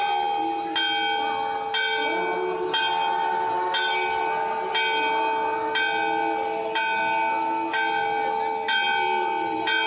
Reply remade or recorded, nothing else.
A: recorded